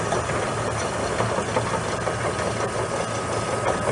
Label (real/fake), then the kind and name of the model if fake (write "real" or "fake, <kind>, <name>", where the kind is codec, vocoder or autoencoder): real